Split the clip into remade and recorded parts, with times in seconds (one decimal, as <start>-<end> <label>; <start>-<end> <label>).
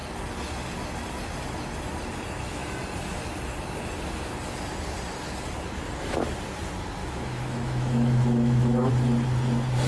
0.0-7.0 recorded; 7.0-8.9 remade; 8.9-9.9 recorded